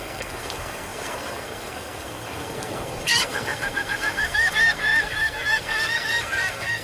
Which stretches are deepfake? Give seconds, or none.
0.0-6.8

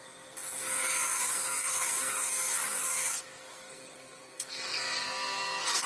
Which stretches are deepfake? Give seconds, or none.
0.0-5.9